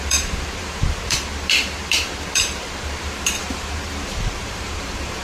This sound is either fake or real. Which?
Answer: fake